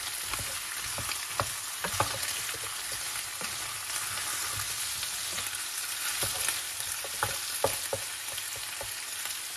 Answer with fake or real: real